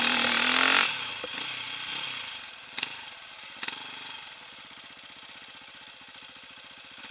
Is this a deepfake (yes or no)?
no